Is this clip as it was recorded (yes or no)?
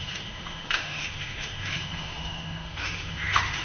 no